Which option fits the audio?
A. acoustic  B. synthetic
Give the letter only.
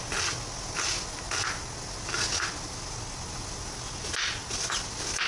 A